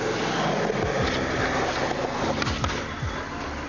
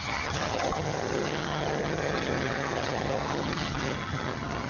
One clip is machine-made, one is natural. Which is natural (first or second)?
first